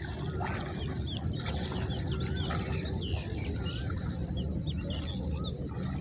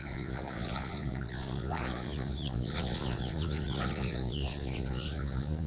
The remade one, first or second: second